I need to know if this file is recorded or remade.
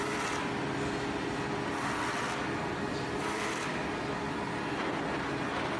recorded